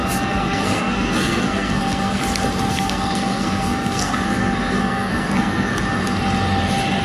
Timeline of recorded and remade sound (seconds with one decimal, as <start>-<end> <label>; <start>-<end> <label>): 0.0-2.2 remade; 2.2-2.7 recorded; 2.7-5.7 remade; 5.7-7.0 recorded